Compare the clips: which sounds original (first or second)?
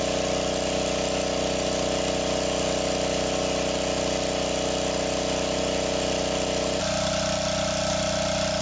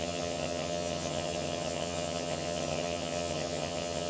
first